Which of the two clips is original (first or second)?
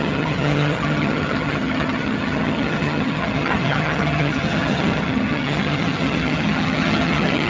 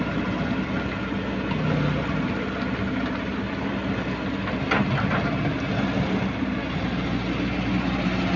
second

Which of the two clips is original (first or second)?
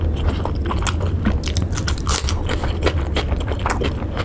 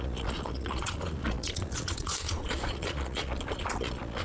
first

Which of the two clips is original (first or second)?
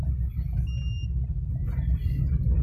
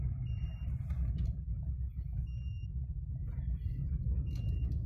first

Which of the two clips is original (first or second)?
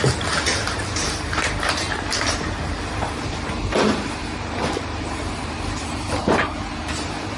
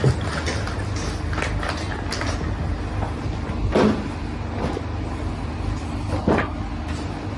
second